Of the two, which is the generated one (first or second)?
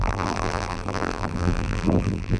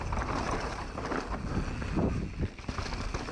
first